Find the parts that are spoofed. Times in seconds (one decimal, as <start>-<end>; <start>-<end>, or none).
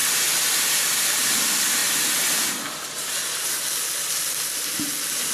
0.6-1.8